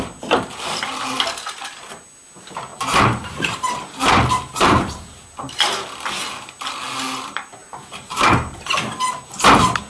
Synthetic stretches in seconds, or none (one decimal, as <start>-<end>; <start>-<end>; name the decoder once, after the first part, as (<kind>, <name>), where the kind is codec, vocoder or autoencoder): 2.7-5.5 (vocoder, BigVGAN v2); 7.6-8.6